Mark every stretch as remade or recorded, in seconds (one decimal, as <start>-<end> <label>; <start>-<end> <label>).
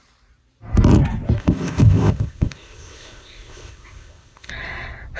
0.0-1.4 recorded; 1.4-4.5 remade; 4.5-5.2 recorded